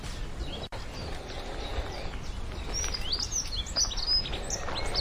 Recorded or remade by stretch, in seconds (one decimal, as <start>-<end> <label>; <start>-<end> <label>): 0.0-5.0 recorded